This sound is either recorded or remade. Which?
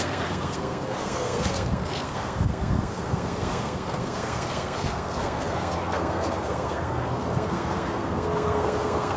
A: remade